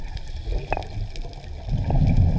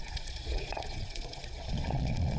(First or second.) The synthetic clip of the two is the second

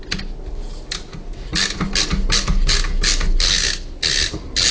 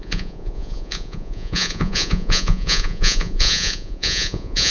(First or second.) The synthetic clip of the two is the second